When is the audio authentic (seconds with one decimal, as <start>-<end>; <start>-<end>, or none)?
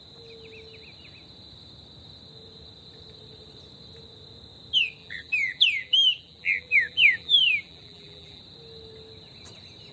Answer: 0.0-5.0; 8.4-9.9